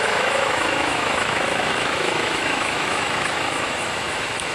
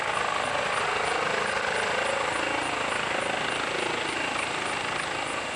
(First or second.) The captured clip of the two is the second